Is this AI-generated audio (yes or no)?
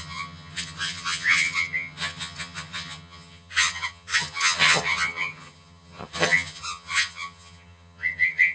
yes